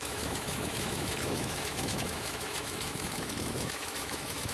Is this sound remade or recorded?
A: remade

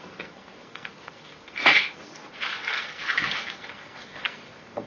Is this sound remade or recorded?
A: remade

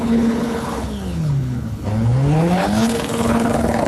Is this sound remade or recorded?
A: remade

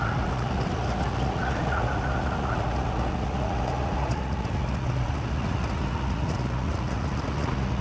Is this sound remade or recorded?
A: remade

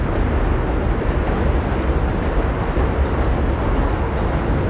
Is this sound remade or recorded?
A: recorded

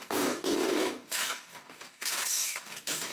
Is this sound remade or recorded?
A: remade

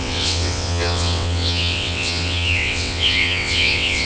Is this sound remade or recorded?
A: remade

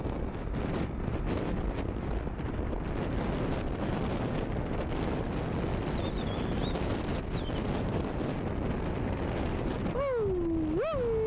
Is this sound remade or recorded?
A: recorded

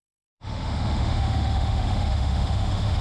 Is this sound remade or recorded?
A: remade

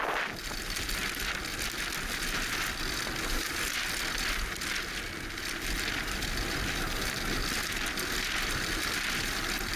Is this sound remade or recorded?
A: recorded